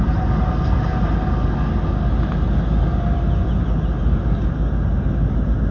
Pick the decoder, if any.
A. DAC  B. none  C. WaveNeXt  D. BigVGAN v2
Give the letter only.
B